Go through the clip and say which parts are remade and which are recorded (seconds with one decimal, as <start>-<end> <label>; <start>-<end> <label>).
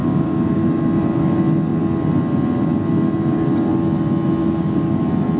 0.0-0.7 remade; 0.7-4.4 recorded; 4.4-5.0 remade; 5.0-5.4 recorded